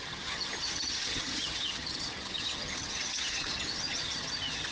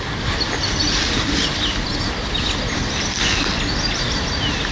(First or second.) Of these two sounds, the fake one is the first